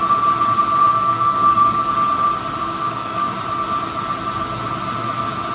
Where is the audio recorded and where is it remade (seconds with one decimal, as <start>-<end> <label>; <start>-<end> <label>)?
0.0-0.9 recorded; 0.9-1.9 remade; 1.9-2.6 recorded; 2.6-3.4 remade; 3.4-5.5 recorded